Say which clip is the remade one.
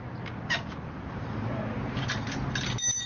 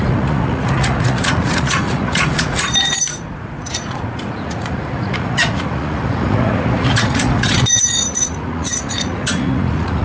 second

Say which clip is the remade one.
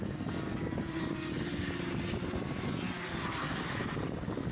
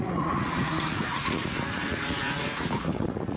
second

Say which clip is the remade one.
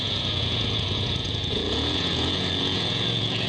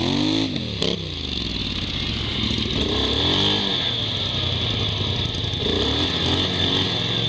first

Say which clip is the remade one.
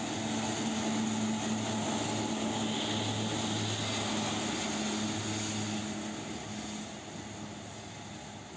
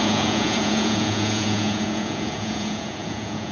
second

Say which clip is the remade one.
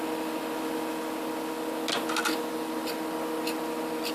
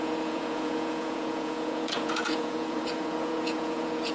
second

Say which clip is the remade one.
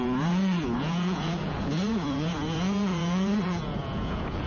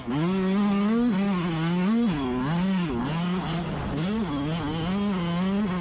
first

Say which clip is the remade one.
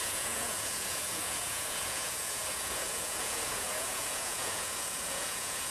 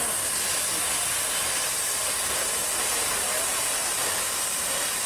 first